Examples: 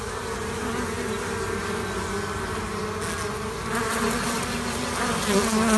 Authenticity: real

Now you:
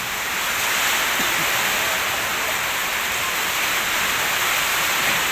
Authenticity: real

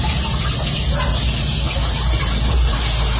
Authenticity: real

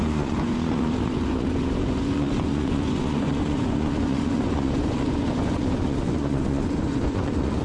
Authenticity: fake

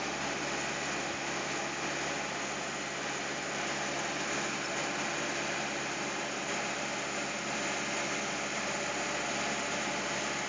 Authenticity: real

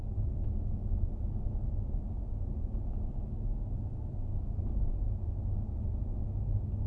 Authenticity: real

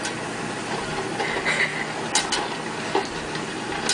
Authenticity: real